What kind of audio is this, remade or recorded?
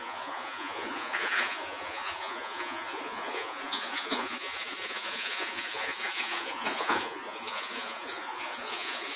remade